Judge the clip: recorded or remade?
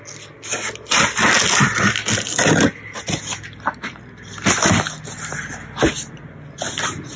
recorded